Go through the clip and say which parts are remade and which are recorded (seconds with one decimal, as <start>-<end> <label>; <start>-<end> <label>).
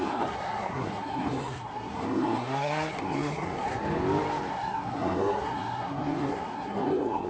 0.0-3.8 remade; 3.8-4.5 recorded; 4.5-7.3 remade